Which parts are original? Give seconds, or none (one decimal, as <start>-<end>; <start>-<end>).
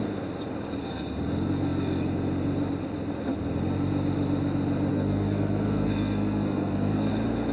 0.0-4.9; 7.1-7.5